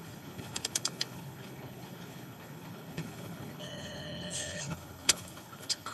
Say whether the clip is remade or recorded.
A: remade